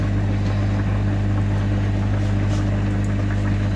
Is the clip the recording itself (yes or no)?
yes